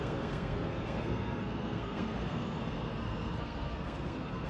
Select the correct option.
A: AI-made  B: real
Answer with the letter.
A